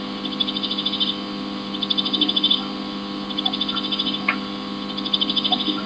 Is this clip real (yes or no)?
yes